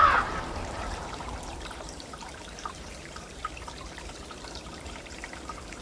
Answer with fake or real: fake